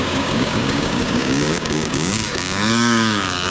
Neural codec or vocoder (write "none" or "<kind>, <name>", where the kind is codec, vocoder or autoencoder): codec, DAC